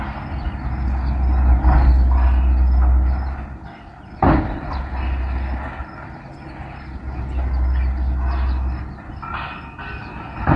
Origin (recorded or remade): recorded